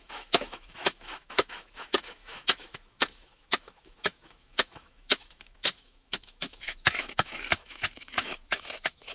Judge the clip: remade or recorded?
remade